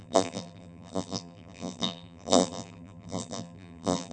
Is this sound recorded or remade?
remade